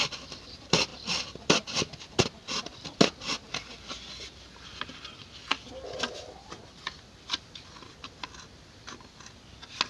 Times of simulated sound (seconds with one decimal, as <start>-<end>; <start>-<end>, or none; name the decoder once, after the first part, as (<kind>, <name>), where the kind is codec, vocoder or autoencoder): none